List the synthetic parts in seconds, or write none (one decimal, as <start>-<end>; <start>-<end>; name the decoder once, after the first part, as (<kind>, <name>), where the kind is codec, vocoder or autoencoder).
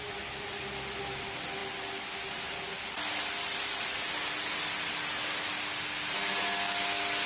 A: none